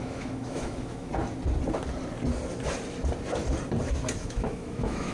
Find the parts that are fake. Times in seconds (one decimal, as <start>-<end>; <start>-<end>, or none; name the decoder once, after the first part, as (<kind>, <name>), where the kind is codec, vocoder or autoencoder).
0.0-1.1 (autoencoder, DAC-VAE); 4.2-5.1